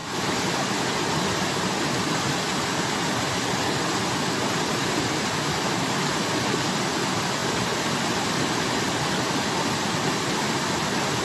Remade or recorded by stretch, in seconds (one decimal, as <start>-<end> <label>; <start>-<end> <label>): 0.0-11.2 recorded